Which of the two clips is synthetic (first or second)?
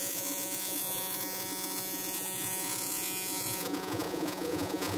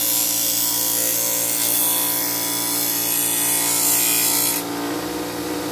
first